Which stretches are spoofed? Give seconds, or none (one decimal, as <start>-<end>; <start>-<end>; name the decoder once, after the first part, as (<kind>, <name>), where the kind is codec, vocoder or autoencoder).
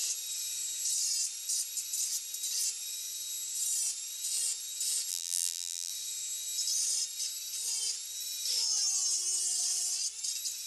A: 5.1-5.9 (vocoder, BigVGAN v2)